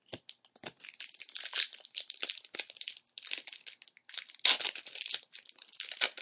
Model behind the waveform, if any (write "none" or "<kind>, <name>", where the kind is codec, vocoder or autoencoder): none